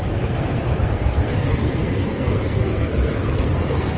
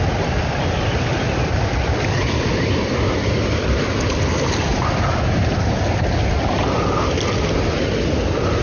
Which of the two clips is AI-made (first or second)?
first